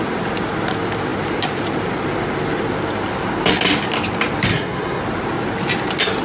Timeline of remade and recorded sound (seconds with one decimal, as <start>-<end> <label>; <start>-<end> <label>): 0.0-4.5 recorded; 4.5-5.0 remade; 5.0-6.2 recorded